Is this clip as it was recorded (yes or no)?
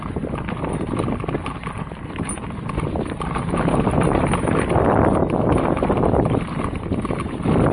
yes